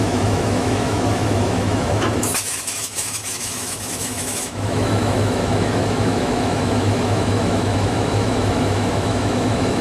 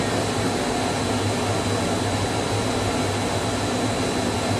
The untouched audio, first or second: second